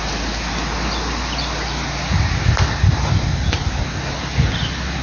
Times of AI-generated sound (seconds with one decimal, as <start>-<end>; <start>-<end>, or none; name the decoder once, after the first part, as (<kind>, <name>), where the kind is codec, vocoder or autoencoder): none